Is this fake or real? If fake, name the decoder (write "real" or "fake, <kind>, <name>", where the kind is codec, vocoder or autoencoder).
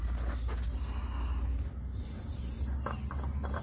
real